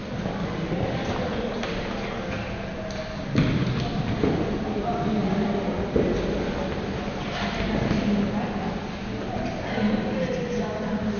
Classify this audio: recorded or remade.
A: recorded